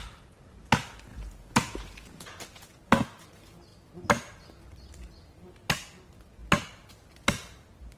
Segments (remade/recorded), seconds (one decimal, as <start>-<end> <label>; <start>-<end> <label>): 0.0-1.1 recorded; 1.1-2.4 remade; 2.4-8.0 recorded